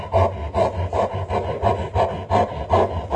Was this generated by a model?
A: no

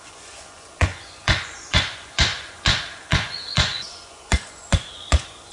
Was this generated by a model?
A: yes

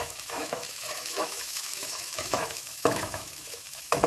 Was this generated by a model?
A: yes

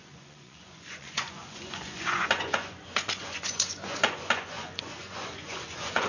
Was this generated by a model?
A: yes